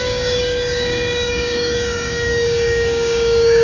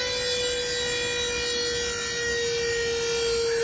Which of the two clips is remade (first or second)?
first